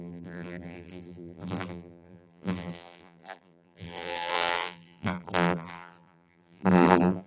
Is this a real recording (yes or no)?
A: no